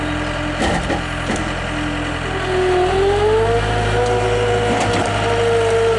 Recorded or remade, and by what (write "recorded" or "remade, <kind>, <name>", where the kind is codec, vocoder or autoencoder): recorded